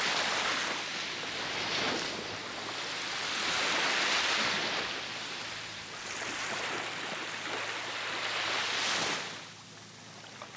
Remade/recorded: recorded